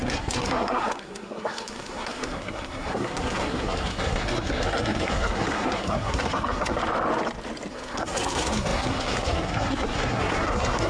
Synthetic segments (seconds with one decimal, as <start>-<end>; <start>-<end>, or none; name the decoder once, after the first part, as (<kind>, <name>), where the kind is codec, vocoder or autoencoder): 0.0-6.8 (codec, SNAC); 7.7-10.9

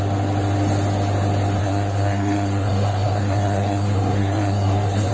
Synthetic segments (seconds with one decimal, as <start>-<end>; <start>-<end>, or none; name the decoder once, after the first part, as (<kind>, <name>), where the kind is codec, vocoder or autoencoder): 1.6-5.1 (codec, SNAC)

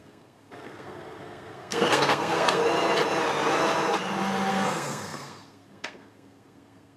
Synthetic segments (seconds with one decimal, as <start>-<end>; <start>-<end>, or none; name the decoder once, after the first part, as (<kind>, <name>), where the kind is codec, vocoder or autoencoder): 0.0-2.6 (codec, SNAC); 4.5-7.0

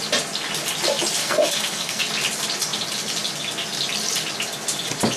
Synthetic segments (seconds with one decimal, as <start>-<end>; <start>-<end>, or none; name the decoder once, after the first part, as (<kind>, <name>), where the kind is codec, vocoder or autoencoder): 1.2-2.1 (codec, SNAC)

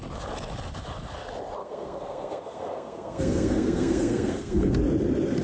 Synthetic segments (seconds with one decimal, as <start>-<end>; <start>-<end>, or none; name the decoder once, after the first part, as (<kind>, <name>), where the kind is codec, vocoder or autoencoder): 1.6-4.8 (codec, SNAC)

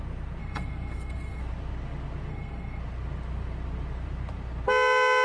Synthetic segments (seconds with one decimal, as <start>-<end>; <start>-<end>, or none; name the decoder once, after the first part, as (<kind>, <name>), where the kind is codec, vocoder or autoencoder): 0.4-1.4 (codec, SNAC); 2.3-2.8

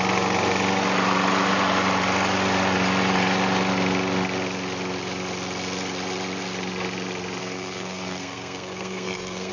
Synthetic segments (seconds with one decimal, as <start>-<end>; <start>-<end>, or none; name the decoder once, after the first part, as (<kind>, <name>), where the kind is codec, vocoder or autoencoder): 7.4-9.5 (codec, SNAC)